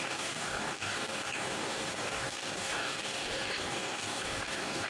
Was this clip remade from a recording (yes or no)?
yes